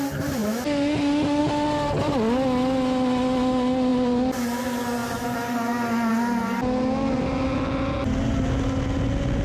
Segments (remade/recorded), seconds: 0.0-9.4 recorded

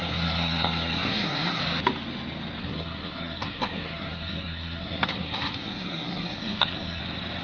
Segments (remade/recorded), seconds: 0.0-1.6 remade; 1.6-2.6 recorded; 2.6-7.0 remade; 7.0-7.4 recorded